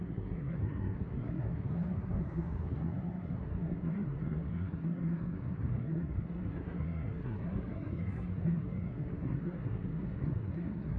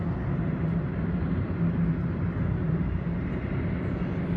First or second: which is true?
second